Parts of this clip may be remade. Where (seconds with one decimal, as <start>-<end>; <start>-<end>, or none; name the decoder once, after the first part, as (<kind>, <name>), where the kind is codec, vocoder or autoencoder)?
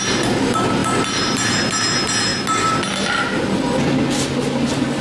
none